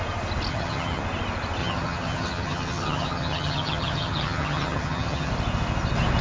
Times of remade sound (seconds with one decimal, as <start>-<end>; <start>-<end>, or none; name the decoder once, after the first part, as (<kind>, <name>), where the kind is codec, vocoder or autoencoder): 0.5-1.0 (vocoder, HiFi-GAN); 1.6-5.3